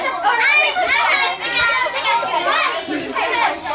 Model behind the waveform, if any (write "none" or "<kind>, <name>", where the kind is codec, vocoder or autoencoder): none